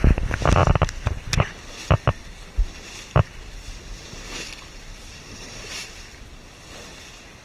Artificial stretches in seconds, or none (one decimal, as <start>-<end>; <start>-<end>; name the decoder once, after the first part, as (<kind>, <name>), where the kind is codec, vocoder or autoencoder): none

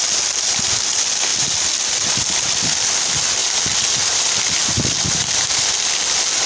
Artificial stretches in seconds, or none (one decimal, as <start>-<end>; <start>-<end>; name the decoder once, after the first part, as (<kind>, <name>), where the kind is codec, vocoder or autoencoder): none